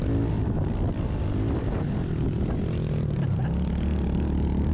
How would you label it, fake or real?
real